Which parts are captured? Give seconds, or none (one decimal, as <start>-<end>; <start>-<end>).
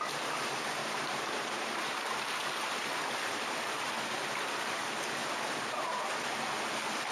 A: 0.0-0.8; 2.7-5.2; 5.7-7.1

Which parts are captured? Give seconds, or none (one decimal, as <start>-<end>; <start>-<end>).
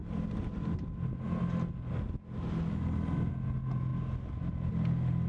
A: 0.0-5.3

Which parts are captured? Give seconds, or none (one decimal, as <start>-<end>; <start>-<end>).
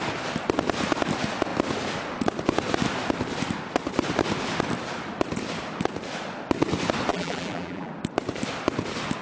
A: 0.0-7.1; 7.9-9.2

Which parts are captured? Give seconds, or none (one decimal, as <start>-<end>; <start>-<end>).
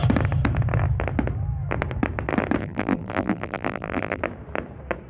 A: 0.0-2.6; 4.2-5.1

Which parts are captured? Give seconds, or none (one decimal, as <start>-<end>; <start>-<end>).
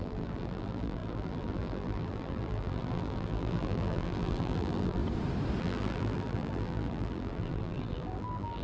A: 5.0-5.6